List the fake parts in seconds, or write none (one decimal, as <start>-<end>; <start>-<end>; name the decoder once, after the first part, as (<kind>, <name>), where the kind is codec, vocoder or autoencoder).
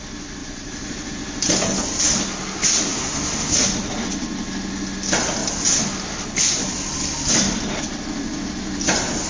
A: 0.4-1.1 (vocoder, BigVGAN v2)